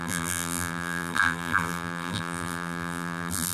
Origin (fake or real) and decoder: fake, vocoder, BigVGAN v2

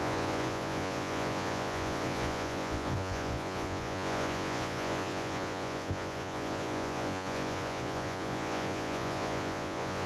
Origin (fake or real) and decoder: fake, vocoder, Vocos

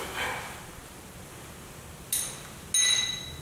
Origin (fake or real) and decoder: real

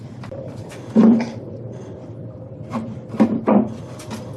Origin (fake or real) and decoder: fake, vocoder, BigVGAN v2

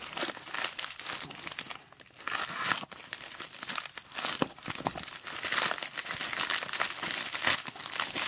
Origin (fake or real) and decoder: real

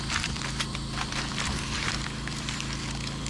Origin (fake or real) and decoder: fake, vocoder, BigVGAN v2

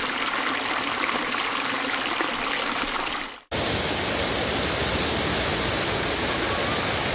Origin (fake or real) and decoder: real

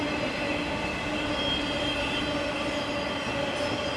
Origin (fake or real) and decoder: real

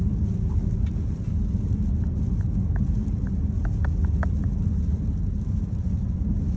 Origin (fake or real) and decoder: real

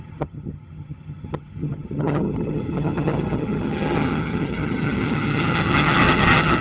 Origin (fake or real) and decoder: fake, vocoder, HiFi-GAN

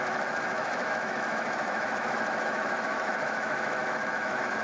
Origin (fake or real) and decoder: fake, autoencoder, DAC-VAE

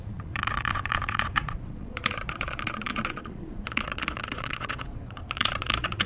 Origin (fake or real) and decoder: fake, vocoder, Vocos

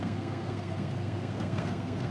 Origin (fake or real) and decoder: fake, codec, SNAC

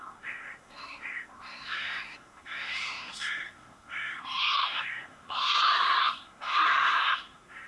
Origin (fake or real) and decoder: fake, codec, SNAC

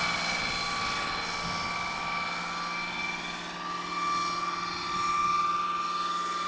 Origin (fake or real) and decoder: real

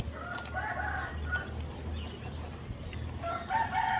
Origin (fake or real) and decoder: real